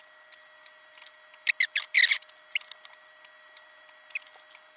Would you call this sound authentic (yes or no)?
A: yes